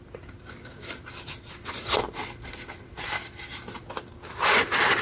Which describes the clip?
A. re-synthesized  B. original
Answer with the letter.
B